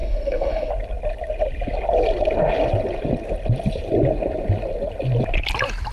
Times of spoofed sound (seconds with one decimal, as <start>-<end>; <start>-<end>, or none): 0.0-0.7